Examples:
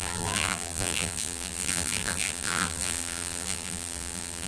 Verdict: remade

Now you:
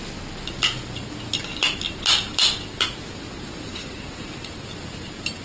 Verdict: recorded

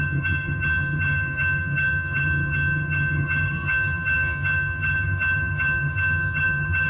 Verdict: remade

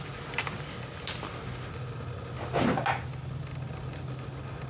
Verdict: recorded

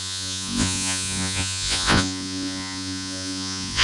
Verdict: remade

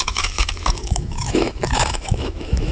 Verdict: remade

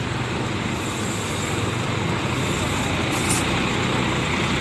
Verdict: recorded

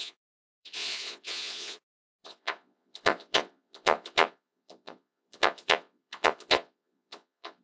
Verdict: remade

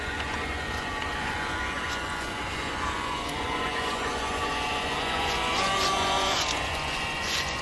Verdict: remade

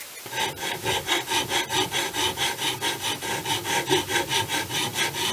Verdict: recorded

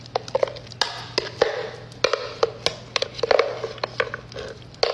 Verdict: recorded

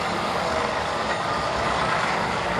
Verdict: remade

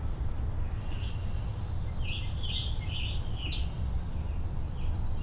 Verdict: recorded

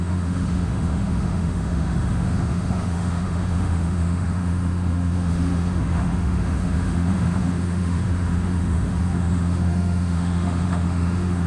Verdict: remade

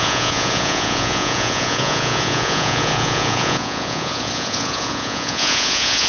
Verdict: remade